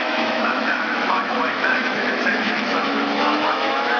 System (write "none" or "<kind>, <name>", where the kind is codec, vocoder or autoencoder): autoencoder, DAC-VAE